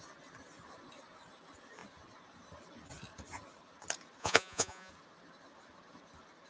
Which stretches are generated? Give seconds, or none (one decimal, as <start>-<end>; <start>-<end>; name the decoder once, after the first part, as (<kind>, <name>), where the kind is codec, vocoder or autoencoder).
4.2-4.9 (vocoder, Vocos)